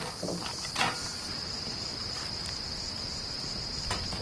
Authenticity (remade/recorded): recorded